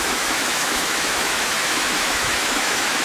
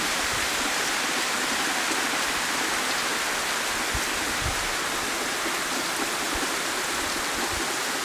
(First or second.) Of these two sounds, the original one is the second